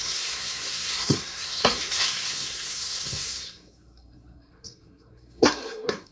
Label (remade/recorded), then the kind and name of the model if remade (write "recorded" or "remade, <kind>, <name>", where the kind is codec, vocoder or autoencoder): remade, codec, SNAC